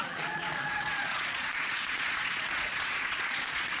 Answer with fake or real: fake